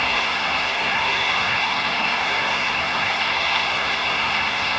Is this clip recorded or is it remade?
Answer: remade